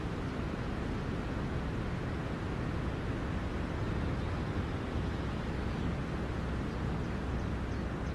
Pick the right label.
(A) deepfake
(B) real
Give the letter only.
B